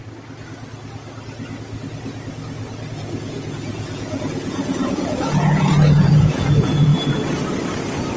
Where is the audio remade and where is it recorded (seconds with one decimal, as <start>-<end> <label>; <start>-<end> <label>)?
0.0-2.9 recorded; 2.9-6.9 remade; 6.9-8.2 recorded